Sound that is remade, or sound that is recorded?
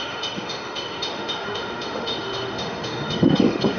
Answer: remade